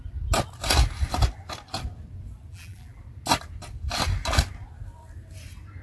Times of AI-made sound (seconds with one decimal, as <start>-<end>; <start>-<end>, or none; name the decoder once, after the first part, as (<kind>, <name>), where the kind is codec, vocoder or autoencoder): 2.5-3.0 (vocoder, BigVGAN v2)